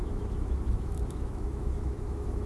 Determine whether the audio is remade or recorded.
remade